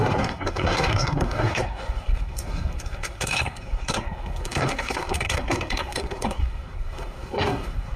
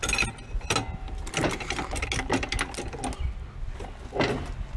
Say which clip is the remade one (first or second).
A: first